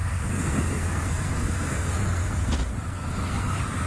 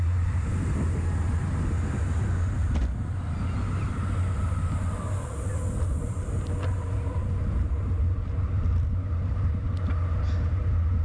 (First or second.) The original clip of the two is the second